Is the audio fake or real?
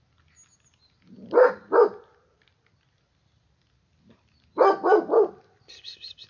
real